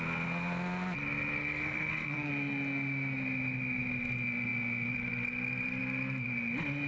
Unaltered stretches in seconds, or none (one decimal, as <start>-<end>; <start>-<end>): 0.0-1.4; 2.3-6.9